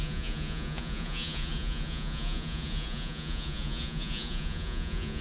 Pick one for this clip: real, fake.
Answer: fake